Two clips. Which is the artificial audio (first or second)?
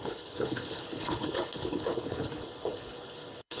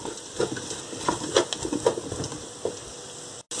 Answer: first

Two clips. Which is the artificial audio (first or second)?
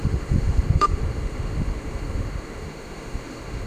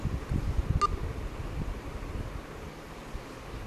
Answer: first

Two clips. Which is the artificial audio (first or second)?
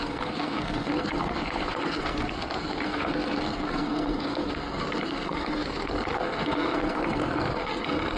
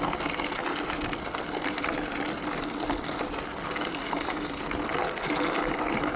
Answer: first